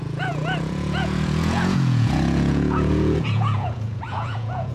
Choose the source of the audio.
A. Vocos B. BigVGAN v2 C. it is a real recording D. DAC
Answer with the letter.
A